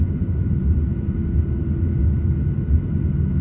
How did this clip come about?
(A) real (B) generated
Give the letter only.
A